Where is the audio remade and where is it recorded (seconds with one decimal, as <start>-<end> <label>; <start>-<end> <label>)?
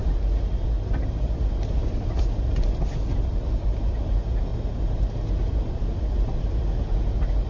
0.0-1.7 recorded; 1.7-4.5 remade; 4.5-6.5 recorded; 6.5-7.5 remade